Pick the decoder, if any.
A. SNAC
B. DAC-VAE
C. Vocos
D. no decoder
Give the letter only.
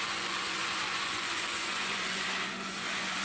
C